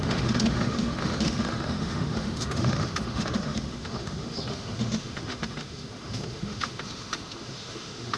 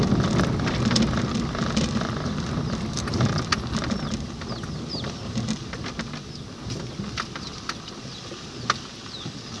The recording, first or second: second